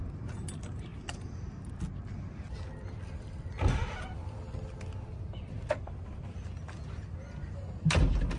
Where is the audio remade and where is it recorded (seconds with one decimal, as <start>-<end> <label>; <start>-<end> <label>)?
0.0-8.4 recorded